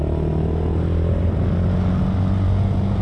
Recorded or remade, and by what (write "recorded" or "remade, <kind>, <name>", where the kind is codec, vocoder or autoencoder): recorded